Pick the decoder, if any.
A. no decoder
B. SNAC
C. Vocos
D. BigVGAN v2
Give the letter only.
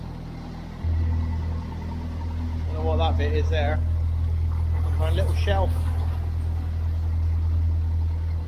A